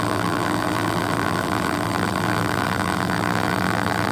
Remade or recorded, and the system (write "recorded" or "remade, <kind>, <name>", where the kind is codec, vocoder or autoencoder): remade, vocoder, BigVGAN v2